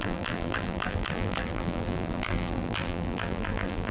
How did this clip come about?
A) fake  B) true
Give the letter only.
A